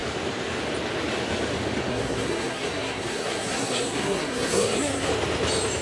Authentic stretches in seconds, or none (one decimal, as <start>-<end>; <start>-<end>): 0.0-1.9; 5.1-5.8